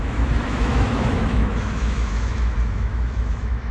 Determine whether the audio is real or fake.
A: fake